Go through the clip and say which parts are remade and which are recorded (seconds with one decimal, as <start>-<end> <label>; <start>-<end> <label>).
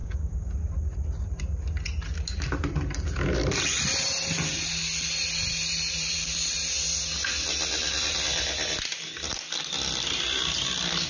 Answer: 0.0-0.5 remade; 0.5-11.1 recorded